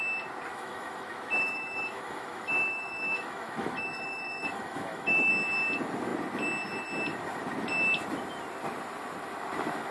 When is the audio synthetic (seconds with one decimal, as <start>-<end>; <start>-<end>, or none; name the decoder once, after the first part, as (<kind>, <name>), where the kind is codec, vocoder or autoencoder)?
0.5-5.3 (autoencoder, DAC-VAE)